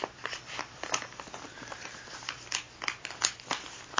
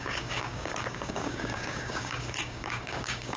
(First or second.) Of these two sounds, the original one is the first